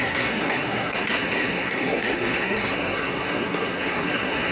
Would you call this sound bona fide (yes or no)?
no